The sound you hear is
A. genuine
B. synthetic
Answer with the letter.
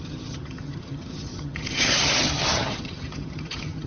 B